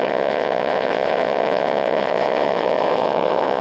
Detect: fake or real fake